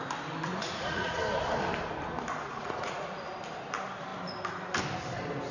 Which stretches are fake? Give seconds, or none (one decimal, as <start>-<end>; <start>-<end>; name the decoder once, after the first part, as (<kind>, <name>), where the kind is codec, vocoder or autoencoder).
0.5-1.2 (vocoder, Vocos); 2.5-3.3